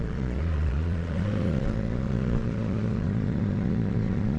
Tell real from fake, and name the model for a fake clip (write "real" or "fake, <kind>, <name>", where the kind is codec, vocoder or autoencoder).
fake, vocoder, Vocos